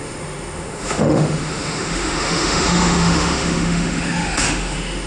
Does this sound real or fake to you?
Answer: fake